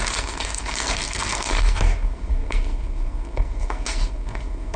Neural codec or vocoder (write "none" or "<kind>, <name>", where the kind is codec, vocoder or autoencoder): codec, SNAC